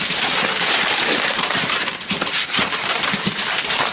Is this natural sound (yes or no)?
no